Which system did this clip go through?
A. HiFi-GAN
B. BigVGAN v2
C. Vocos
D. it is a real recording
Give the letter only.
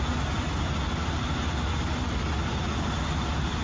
D